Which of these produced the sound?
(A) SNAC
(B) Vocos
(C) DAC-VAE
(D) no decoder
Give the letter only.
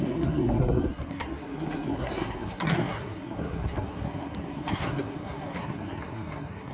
A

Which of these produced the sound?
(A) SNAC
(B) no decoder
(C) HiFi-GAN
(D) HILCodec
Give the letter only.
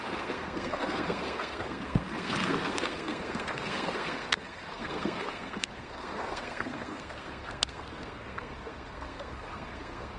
A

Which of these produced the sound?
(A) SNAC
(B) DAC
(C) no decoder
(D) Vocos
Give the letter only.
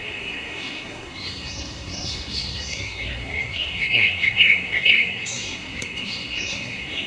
A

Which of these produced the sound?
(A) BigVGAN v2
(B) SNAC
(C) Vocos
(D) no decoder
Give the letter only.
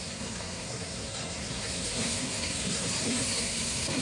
B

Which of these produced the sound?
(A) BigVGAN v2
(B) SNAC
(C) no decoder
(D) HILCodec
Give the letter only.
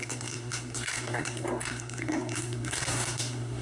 B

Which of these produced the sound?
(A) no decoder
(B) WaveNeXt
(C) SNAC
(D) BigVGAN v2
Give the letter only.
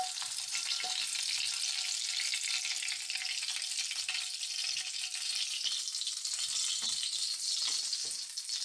A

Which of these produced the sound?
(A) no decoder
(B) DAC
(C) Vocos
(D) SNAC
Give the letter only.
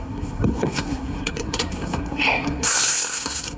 D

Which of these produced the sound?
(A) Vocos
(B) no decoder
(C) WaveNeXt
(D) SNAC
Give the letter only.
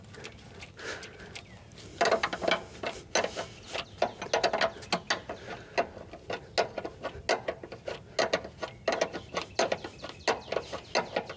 B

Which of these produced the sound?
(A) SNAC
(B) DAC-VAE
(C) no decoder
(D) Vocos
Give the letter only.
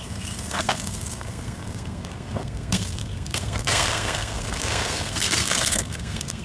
A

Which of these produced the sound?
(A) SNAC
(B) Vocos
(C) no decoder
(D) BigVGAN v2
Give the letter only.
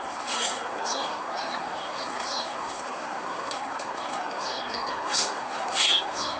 A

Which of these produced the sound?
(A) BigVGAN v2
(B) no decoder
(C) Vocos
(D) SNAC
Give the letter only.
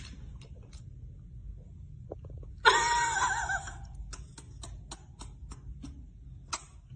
B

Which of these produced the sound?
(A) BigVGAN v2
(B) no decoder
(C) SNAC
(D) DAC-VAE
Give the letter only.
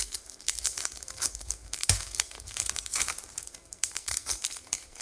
C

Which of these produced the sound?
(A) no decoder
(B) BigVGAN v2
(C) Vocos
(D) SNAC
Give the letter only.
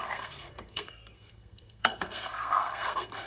D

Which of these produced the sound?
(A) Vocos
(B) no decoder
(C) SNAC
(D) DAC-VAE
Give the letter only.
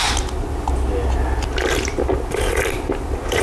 B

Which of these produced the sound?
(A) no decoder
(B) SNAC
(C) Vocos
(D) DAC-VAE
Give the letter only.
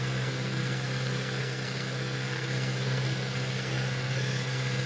B